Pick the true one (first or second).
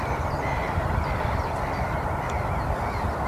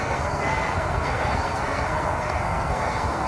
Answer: first